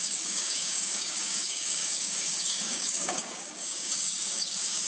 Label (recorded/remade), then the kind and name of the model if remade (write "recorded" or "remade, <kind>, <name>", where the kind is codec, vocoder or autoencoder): remade, codec, DAC